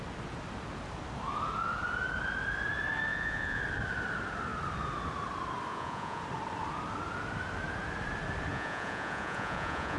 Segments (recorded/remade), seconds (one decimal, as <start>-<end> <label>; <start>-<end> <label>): 0.0-3.1 recorded; 3.1-3.6 remade; 3.6-5.7 recorded; 5.7-6.2 remade; 6.2-8.5 recorded; 8.5-10.0 remade